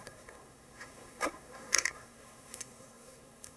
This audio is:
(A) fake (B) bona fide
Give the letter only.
A